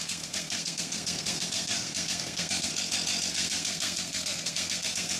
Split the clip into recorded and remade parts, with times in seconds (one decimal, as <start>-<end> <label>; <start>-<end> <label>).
0.0-2.7 remade; 2.7-3.3 recorded; 3.3-5.2 remade